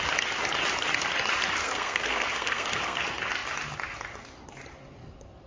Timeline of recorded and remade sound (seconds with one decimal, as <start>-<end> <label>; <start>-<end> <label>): 0.0-1.6 recorded; 1.6-3.0 remade; 3.0-5.5 recorded